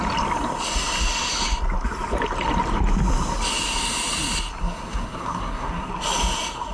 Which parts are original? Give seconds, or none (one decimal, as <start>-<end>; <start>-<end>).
0.0-4.6; 5.9-6.7